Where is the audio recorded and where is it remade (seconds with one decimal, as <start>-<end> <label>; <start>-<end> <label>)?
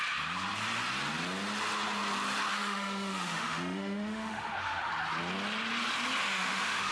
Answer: 0.0-2.5 recorded; 2.5-4.9 remade; 4.9-6.2 recorded; 6.2-6.9 remade